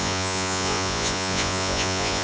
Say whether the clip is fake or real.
fake